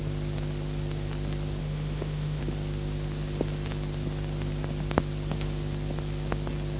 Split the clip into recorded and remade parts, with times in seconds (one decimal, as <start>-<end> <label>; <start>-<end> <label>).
0.0-1.6 recorded; 1.6-2.4 remade; 2.4-6.8 recorded